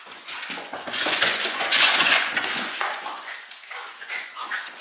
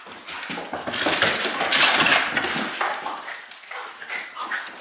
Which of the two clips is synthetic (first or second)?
first